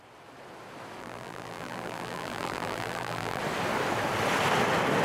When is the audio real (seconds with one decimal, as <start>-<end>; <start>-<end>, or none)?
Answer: 0.0-1.0; 3.4-5.0